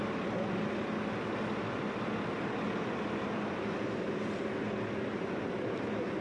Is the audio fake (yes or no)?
no